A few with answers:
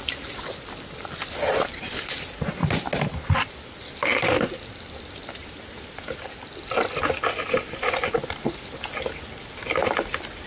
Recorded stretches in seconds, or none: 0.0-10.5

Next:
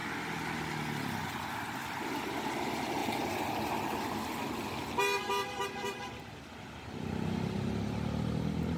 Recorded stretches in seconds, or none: 0.0-8.8